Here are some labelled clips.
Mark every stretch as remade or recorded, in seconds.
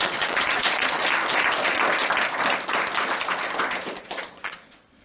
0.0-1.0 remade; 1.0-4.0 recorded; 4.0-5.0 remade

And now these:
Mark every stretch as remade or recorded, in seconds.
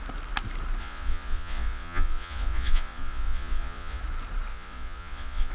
0.0-0.8 recorded; 0.8-4.0 remade; 4.0-4.5 recorded; 4.5-5.5 remade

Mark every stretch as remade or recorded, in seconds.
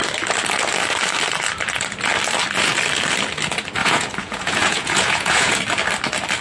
0.0-3.8 recorded; 3.8-5.6 remade; 5.6-6.4 recorded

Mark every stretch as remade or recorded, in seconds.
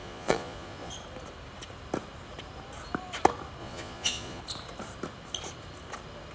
0.0-0.9 remade; 0.9-3.6 recorded; 3.6-4.4 remade; 4.4-6.3 recorded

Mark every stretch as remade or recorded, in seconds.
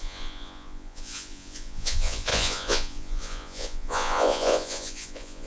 0.0-5.5 remade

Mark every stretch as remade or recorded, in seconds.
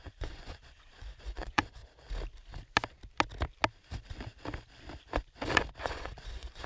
0.0-1.8 remade; 1.8-5.8 recorded; 5.8-6.7 remade